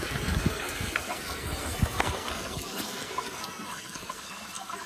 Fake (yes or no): yes